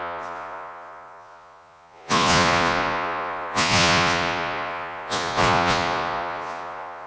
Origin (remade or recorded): remade